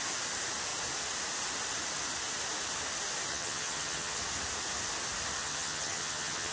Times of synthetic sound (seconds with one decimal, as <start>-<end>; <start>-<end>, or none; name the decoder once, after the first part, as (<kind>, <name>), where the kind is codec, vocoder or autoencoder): 3.3-4.2 (vocoder, HiFi-GAN); 5.4-6.5

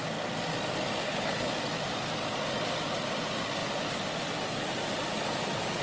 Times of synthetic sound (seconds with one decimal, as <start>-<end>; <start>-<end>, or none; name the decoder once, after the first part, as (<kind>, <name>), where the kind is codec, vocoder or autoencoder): 1.0-1.5 (codec, HILCodec)

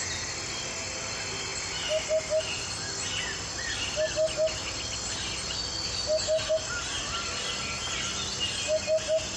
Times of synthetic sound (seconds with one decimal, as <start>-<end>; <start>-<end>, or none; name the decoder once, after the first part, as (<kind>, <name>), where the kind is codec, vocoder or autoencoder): none